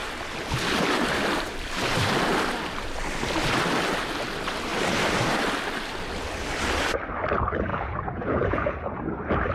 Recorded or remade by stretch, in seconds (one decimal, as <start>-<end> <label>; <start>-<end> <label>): 0.0-7.7 recorded; 7.7-9.0 remade; 9.0-9.5 recorded